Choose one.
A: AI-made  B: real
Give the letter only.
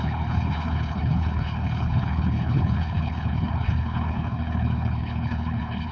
A